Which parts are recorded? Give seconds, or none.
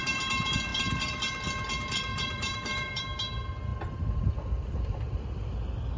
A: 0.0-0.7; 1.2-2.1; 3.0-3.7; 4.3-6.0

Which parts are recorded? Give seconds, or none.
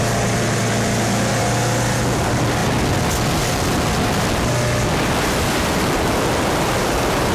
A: 0.0-7.3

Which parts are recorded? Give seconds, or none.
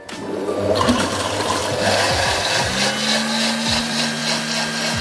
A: 1.6-3.8; 4.2-5.0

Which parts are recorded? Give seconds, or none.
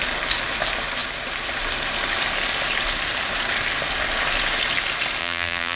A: 0.0-5.2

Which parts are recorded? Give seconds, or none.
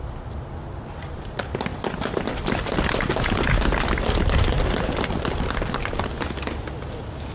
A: 0.0-7.3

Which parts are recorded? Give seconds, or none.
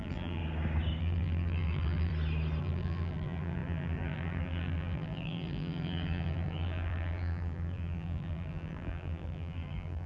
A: 0.4-1.0; 2.1-2.6